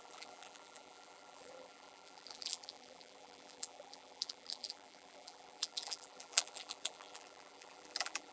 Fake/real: fake